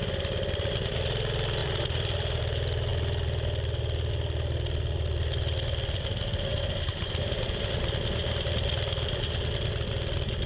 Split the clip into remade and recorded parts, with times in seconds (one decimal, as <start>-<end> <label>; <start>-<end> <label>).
0.0-1.6 recorded; 1.6-2.4 remade; 2.4-6.5 recorded; 6.5-7.8 remade; 7.8-10.5 recorded